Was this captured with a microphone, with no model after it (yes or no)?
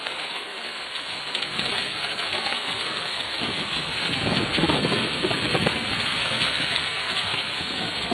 no